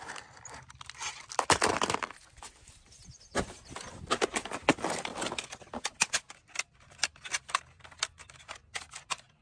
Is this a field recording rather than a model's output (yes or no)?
yes